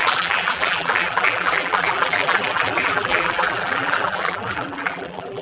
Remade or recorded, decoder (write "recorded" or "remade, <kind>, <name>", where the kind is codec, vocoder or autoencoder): remade, vocoder, BigVGAN v2